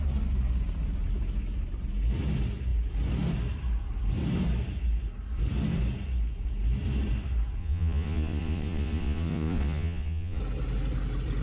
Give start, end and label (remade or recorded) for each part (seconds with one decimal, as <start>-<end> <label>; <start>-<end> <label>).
0.0-7.6 recorded; 7.6-10.4 remade; 10.4-11.4 recorded